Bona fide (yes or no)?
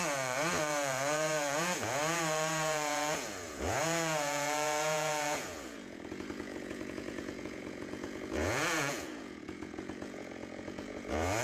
no